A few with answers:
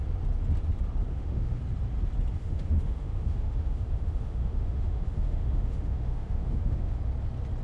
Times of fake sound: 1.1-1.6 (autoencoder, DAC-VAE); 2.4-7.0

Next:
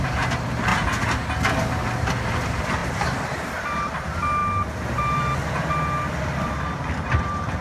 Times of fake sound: 0.0-0.7 (vocoder, BigVGAN v2); 2.0-4.4; 6.1-7.6